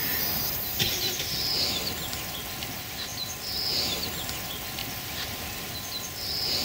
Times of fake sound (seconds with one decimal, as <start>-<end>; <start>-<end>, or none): 0.0-1.5; 3.1-3.6; 4.8-5.4